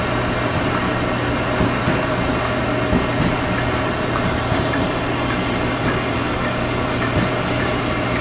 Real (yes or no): yes